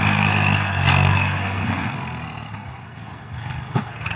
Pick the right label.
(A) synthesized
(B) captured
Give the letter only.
A